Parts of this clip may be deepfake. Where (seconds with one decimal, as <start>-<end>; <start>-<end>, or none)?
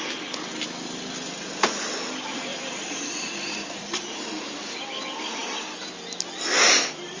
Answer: 2.5-4.6